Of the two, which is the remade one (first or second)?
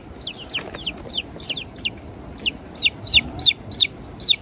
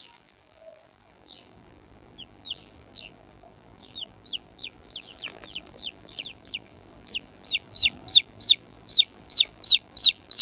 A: second